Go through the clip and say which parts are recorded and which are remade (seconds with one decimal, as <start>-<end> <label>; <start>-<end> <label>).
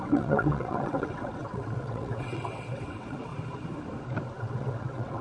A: 0.0-3.3 remade; 3.3-4.4 recorded; 4.4-5.2 remade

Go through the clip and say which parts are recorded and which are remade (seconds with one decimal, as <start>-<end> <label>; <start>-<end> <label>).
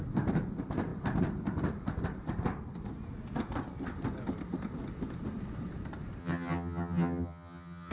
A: 0.0-6.2 recorded; 6.2-7.9 remade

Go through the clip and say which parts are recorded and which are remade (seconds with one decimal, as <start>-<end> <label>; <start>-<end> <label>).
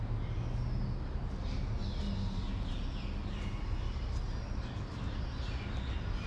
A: 0.0-6.3 recorded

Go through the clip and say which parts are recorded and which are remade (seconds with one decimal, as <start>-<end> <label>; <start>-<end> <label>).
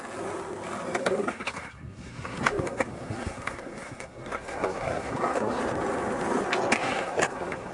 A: 0.0-1.0 recorded; 1.0-5.6 remade; 5.6-6.8 recorded; 6.8-7.7 remade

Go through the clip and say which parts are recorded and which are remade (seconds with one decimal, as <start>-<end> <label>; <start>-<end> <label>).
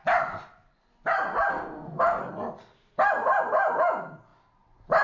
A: 0.0-1.5 recorded; 1.5-2.2 remade; 2.2-5.0 recorded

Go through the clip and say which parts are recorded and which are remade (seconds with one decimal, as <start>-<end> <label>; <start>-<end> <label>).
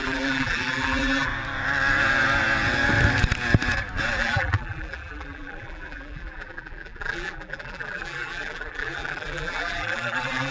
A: 0.0-1.3 remade; 1.3-4.2 recorded; 4.2-10.5 remade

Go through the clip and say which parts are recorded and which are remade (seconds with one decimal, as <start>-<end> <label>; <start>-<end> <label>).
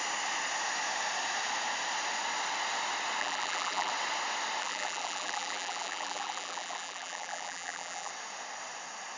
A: 0.0-3.2 recorded; 3.2-3.9 remade; 3.9-4.6 recorded; 4.6-8.1 remade; 8.1-9.2 recorded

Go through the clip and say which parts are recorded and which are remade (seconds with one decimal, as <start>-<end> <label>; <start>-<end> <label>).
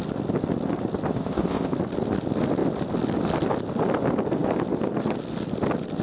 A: 0.0-1.1 recorded; 1.1-1.7 remade; 1.7-6.0 recorded